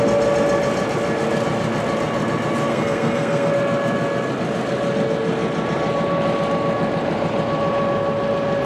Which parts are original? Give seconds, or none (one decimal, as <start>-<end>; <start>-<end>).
0.0-2.7; 3.5-8.7